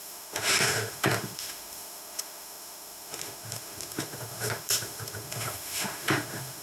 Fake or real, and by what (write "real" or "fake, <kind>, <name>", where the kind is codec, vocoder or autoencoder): fake, autoencoder, DAC-VAE